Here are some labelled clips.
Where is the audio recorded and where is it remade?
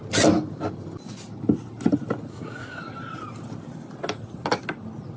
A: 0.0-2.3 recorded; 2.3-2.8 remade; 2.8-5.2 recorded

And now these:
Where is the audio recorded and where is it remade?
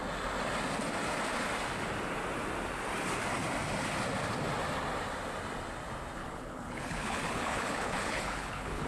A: 0.0-6.2 recorded; 6.2-8.9 remade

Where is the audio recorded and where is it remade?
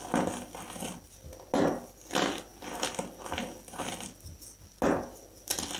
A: 0.0-5.8 recorded